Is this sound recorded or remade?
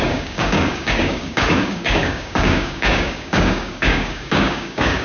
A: remade